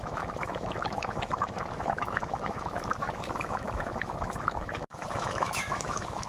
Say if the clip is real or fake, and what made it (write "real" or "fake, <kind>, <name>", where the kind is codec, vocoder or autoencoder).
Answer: fake, autoencoder, DAC-VAE